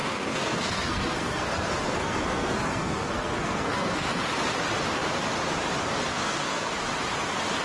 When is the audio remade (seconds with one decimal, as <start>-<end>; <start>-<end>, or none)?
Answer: 0.0-4.2; 6.1-6.7

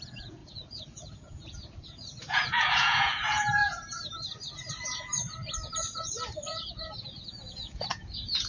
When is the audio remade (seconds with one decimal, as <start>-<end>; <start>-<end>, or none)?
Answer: 0.0-3.6; 6.7-8.5

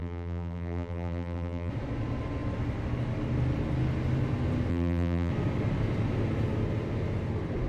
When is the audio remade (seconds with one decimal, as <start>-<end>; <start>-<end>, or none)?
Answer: 0.0-1.7; 4.7-5.3